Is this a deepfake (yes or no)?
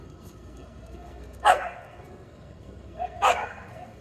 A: yes